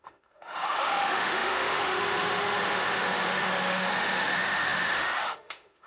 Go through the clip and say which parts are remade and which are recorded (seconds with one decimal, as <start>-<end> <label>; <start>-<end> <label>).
0.0-5.9 remade